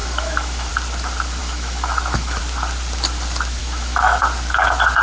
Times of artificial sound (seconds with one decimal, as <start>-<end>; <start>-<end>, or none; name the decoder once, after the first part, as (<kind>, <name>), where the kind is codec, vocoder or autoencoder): 0.0-0.7 (autoencoder, DAC-VAE); 1.4-2.4; 3.6-4.2